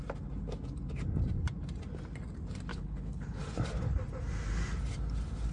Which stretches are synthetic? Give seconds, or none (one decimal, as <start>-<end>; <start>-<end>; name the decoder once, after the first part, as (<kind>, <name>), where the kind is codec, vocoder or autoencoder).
2.7-3.4 (codec, HILCodec)